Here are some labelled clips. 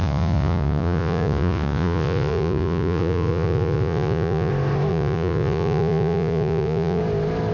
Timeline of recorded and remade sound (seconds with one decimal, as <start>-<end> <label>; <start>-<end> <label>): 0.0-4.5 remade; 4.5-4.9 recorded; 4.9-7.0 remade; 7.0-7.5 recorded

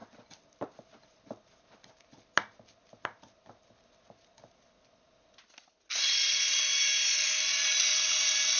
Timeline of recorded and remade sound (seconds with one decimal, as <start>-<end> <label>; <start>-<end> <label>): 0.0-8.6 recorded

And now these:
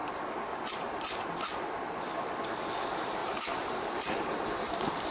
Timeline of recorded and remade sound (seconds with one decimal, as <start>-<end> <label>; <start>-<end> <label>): 0.0-3.2 recorded; 3.2-5.1 remade